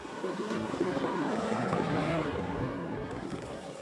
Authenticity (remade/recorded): remade